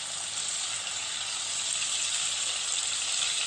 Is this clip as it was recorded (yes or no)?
yes